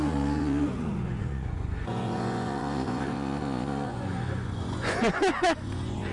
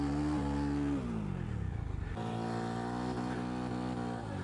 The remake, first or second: first